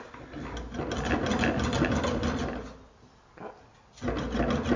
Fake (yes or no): no